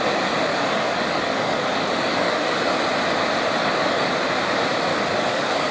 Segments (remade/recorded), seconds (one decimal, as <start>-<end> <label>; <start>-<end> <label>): 0.0-0.5 recorded; 0.5-2.6 remade; 2.6-3.6 recorded; 3.6-4.2 remade; 4.2-4.9 recorded; 4.9-5.7 remade